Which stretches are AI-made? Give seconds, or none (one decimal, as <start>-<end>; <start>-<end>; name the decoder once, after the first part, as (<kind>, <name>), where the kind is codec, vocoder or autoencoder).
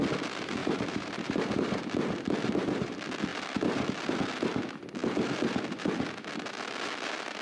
0.6-1.8 (vocoder, BigVGAN v2)